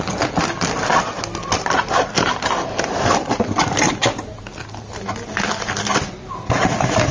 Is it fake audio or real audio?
real